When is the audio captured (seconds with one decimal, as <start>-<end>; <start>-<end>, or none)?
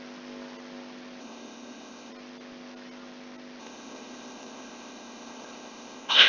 0.0-1.2; 2.1-3.6